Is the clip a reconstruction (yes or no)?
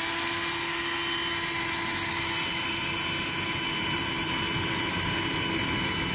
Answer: no